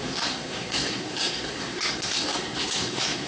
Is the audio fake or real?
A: fake